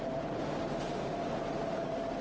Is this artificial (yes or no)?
no